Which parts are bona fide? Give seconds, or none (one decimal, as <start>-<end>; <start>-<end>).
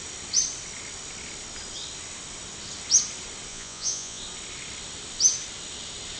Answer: 0.0-3.5; 4.2-6.2